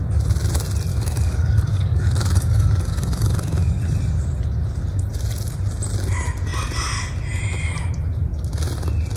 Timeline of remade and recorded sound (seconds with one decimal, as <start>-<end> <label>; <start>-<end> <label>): 0.0-0.9 recorded; 0.9-3.8 remade; 3.8-9.2 recorded